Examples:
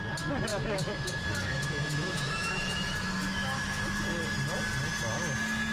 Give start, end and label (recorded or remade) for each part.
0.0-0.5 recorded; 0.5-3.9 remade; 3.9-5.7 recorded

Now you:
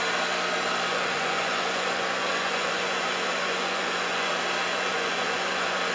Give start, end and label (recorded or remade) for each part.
0.0-0.9 recorded; 0.9-4.3 remade; 4.3-4.7 recorded; 4.7-5.9 remade

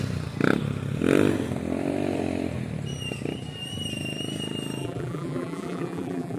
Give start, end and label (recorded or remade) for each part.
0.0-4.8 recorded; 4.8-6.4 remade

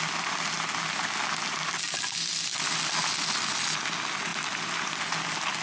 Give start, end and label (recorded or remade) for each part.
0.0-5.6 recorded

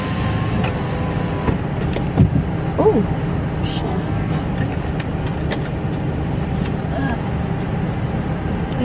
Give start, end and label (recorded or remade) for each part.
0.0-3.7 recorded; 3.7-4.4 remade; 4.4-8.8 recorded